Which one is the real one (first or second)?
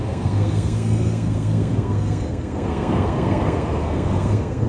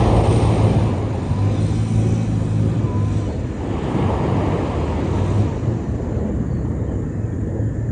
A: second